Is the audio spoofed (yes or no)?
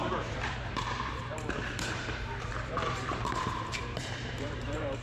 yes